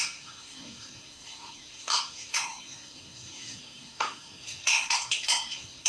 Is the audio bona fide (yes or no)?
no